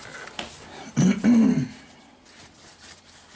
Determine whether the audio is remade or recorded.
recorded